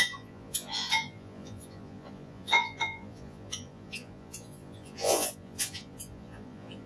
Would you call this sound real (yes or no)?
no